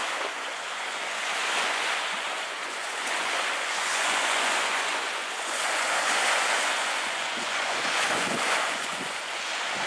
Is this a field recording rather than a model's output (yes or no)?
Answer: no